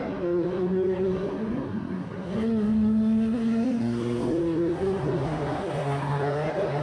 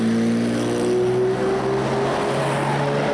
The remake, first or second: first